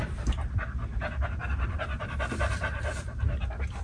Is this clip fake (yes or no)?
no